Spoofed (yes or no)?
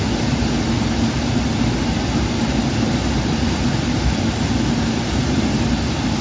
no